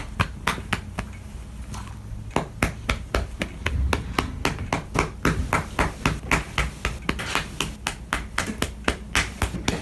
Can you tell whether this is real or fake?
real